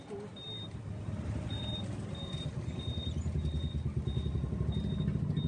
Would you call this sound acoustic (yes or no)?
yes